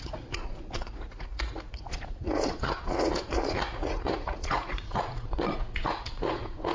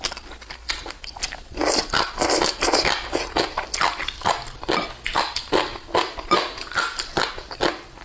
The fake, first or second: first